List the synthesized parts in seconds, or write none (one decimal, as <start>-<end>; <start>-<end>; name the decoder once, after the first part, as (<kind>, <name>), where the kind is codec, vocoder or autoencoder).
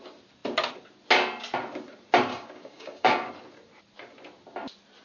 2.3-3.3 (codec, DAC)